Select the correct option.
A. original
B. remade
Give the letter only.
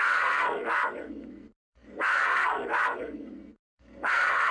B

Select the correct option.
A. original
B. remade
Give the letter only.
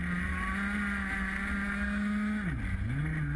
A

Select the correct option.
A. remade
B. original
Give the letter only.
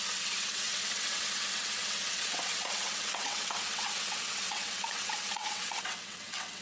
A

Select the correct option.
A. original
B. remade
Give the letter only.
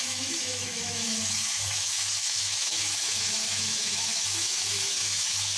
B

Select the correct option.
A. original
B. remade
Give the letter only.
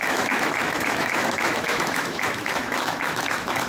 B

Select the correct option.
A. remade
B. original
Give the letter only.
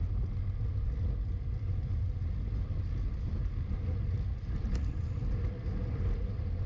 B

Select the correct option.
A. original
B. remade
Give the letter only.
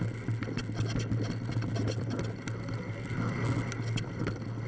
A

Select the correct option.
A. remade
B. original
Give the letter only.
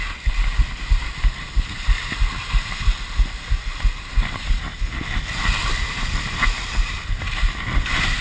B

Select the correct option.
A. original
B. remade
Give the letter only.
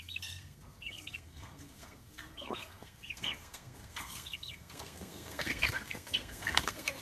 B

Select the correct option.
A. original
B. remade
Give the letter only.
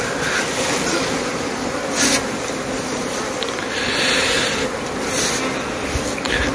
A